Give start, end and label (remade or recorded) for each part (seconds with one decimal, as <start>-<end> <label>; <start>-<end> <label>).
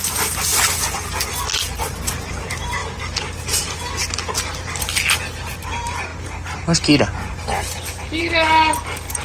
0.0-9.2 recorded